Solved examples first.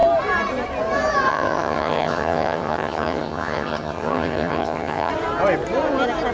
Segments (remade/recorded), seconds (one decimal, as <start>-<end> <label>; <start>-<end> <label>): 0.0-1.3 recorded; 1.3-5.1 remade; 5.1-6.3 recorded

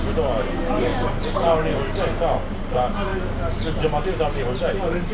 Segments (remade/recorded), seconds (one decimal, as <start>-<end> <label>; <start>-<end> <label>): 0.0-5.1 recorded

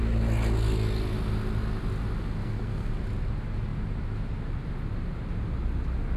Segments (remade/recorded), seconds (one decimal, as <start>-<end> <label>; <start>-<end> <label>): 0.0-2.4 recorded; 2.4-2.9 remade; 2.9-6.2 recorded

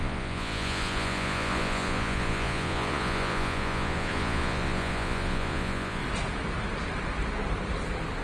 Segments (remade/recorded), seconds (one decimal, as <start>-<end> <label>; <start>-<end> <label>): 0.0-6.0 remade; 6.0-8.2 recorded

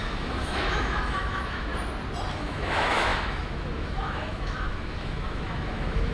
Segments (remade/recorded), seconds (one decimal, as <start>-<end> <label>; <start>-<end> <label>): 0.0-1.7 remade; 1.7-2.3 recorded; 2.3-6.1 remade